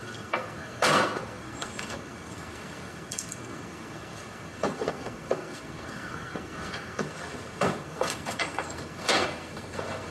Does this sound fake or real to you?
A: fake